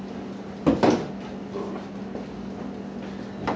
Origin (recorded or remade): recorded